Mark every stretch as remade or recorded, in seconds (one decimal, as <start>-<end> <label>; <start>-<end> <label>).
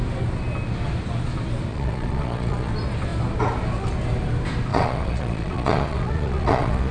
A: 0.0-1.7 recorded; 1.7-2.7 remade; 2.7-4.7 recorded; 4.7-6.9 remade